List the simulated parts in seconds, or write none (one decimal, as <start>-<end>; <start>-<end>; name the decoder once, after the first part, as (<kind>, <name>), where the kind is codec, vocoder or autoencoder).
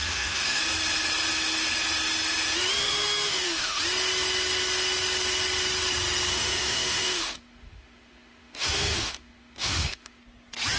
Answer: 0.0-0.6 (autoencoder, DAC-VAE); 2.8-3.8; 6.3-10.2